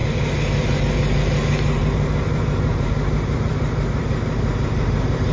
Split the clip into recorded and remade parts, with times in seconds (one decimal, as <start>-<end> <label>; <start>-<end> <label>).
0.0-1.8 recorded; 1.8-5.3 remade